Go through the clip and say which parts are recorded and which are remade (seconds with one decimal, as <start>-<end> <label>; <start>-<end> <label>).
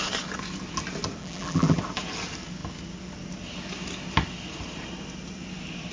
0.0-1.2 recorded; 1.2-1.8 remade; 1.8-5.9 recorded